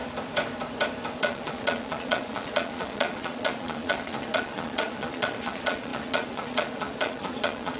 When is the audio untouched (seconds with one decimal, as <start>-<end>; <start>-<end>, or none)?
0.0-1.2